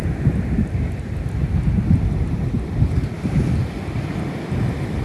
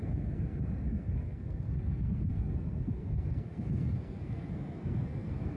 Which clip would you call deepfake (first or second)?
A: second